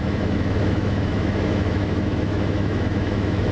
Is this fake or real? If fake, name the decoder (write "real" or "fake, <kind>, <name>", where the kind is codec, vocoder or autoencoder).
fake, autoencoder, DAC-VAE